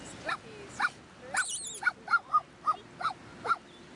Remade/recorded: recorded